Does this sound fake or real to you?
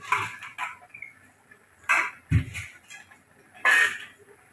real